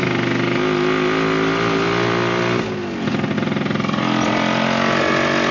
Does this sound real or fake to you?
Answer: real